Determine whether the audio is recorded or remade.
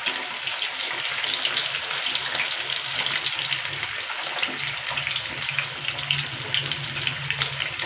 recorded